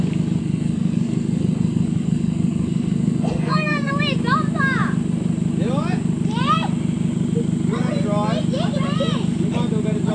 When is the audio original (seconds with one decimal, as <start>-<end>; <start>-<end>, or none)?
0.0-0.4; 3.9-10.1

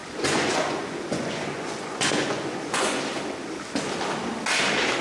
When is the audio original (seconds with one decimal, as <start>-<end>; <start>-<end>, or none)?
3.0-5.0